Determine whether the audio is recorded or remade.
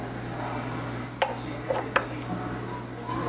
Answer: recorded